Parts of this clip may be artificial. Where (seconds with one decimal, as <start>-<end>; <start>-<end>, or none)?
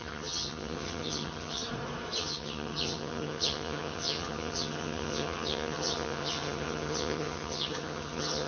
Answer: 0.0-1.6; 2.2-8.5